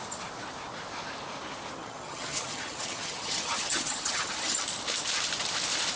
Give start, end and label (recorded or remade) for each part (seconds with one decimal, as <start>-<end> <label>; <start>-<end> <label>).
0.0-1.8 recorded; 1.8-4.6 remade; 4.6-6.0 recorded